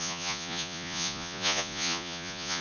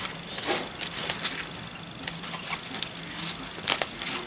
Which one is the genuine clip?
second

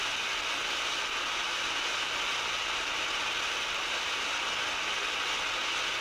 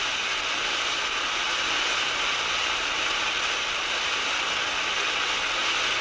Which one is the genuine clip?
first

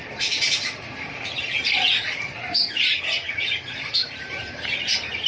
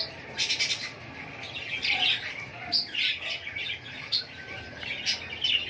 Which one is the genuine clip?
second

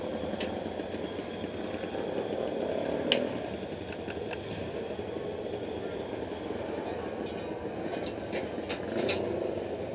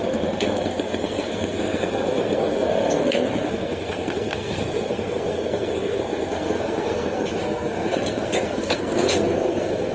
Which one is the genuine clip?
first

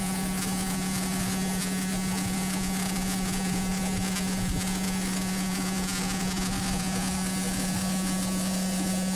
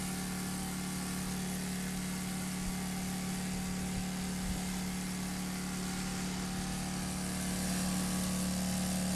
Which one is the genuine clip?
second